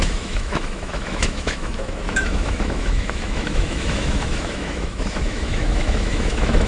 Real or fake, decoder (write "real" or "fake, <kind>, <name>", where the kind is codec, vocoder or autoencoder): fake, autoencoder, DAC-VAE